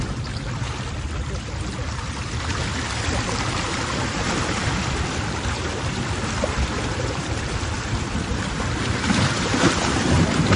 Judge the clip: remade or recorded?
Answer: remade